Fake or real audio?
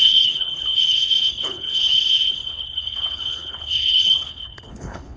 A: fake